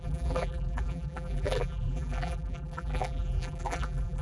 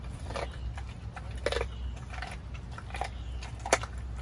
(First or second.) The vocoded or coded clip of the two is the first